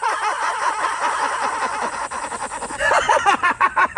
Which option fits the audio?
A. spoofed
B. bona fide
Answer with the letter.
A